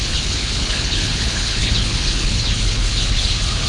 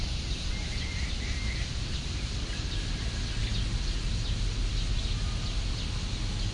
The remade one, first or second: first